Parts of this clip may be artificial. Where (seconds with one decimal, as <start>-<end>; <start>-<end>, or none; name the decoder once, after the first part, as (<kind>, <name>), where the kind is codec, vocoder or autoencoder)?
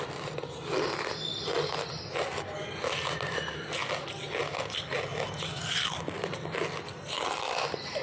none